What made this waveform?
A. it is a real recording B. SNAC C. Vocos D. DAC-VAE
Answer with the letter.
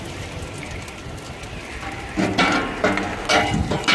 A